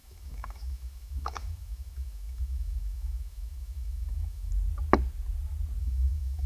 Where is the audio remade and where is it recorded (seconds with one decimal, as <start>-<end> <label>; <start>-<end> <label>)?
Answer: 0.0-4.5 remade; 4.5-5.8 recorded; 5.8-6.5 remade